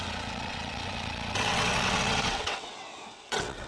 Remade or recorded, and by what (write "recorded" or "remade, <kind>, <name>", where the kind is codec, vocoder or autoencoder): remade, vocoder, WaveNeXt